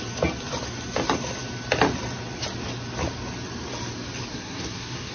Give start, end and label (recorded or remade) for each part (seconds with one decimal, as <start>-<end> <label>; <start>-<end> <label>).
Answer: 0.0-4.3 recorded; 4.3-5.1 remade